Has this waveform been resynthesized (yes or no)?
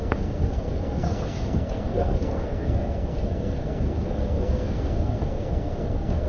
yes